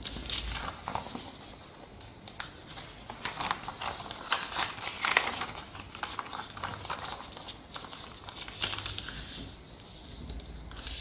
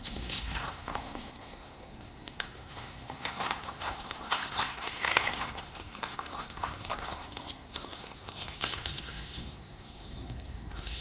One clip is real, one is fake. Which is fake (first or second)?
second